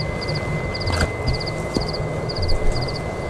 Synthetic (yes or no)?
no